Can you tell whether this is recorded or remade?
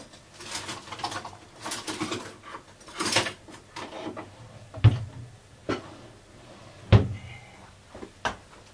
recorded